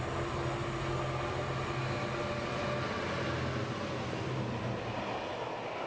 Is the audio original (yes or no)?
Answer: yes